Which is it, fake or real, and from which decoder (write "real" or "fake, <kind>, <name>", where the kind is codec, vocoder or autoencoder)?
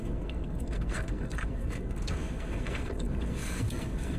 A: fake, codec, SNAC